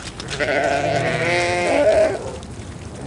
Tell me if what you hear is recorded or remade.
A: recorded